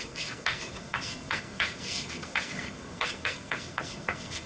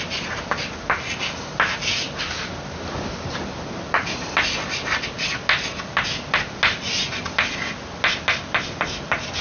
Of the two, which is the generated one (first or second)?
first